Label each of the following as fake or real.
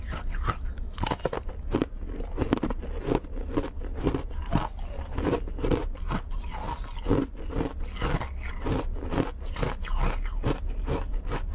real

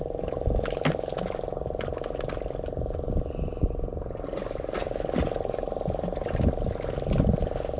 real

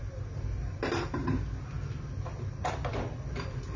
real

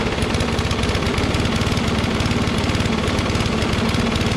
real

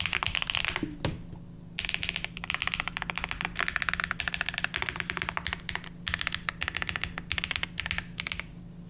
real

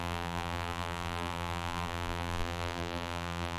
fake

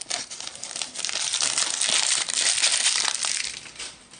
fake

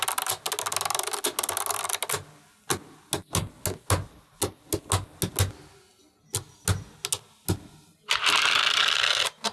real